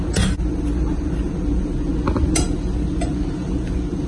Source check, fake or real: real